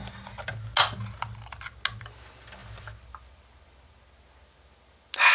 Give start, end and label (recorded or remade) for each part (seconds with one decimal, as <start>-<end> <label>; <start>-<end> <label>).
0.0-5.3 recorded